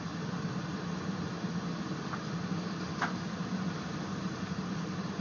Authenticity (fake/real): real